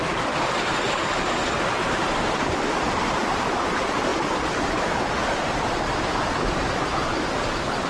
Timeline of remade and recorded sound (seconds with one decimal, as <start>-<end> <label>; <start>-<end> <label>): 0.0-7.9 recorded